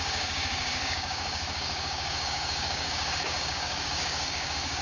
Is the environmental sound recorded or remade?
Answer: remade